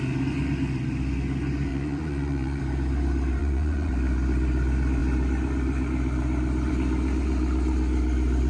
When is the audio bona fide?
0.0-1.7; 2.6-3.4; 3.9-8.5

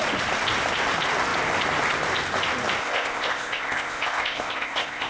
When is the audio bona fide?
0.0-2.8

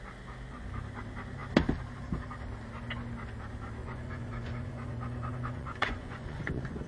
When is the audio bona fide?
0.0-3.8